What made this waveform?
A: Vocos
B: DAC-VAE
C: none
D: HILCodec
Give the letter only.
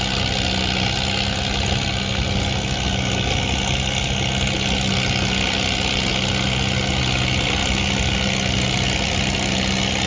C